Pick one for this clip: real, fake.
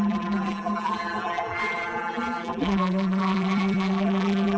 fake